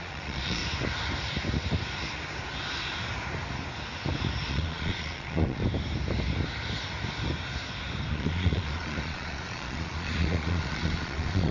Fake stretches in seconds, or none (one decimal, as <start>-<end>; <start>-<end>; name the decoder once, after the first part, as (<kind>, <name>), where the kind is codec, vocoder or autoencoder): 0.0-0.6 (vocoder, Vocos); 4.5-5.6; 8.1-11.5